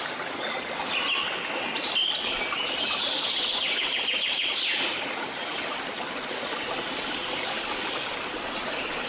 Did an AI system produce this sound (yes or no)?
no